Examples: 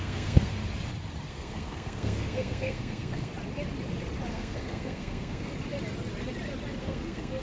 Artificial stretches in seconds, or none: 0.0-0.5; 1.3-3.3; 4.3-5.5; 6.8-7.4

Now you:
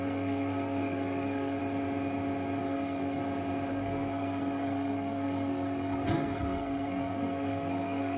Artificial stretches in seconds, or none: 0.0-1.6; 2.6-3.2; 3.7-8.2

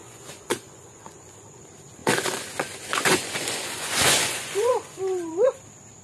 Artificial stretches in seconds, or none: 0.0-1.6; 2.0-5.6